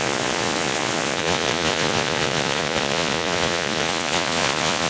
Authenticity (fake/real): fake